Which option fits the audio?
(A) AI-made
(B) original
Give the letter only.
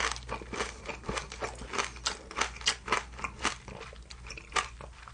B